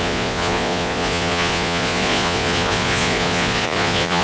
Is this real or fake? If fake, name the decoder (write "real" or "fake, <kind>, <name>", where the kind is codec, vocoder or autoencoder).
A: fake, vocoder, Vocos